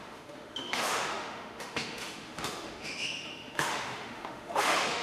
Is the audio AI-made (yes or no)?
yes